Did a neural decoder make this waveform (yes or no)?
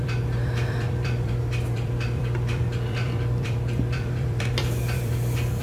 yes